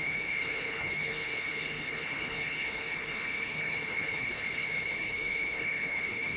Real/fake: fake